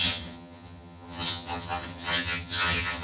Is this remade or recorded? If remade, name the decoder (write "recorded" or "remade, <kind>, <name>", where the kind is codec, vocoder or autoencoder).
remade, vocoder, HiFi-GAN